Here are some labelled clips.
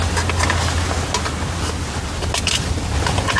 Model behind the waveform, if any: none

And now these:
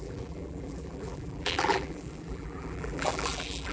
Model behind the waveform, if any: vocoder, BigVGAN v2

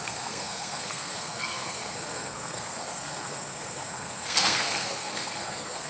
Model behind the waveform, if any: codec, SNAC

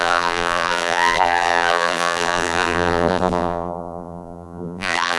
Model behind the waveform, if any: vocoder, BigVGAN v2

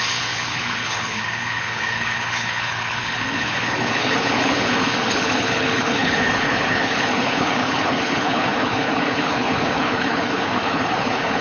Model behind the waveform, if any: codec, HILCodec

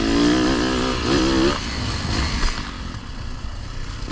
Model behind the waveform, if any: none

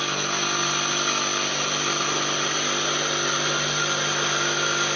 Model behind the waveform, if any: none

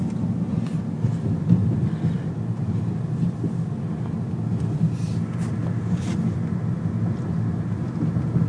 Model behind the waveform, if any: none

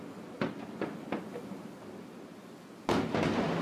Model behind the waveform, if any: none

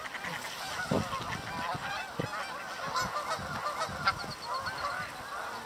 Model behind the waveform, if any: none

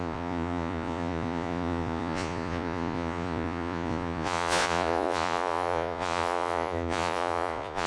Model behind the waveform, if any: vocoder, Vocos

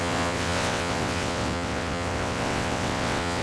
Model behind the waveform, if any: vocoder, WaveNeXt